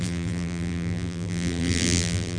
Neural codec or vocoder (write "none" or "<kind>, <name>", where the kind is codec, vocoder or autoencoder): vocoder, BigVGAN v2